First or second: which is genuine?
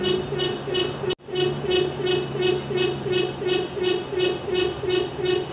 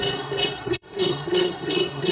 first